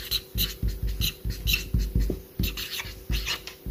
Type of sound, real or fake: real